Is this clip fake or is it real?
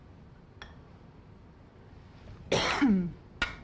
real